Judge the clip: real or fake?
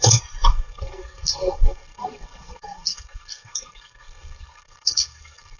fake